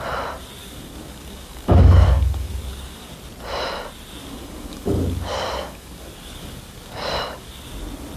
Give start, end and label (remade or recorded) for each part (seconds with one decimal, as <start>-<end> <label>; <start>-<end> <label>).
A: 0.0-0.6 recorded; 0.6-3.1 remade; 3.1-4.2 recorded; 4.2-7.5 remade; 7.5-8.2 recorded